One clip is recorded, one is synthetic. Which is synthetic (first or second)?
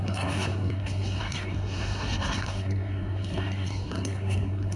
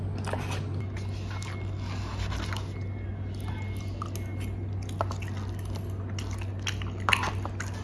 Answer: first